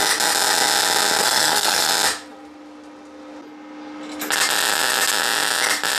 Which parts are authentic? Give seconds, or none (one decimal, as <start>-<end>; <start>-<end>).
0.0-1.2; 1.9-6.0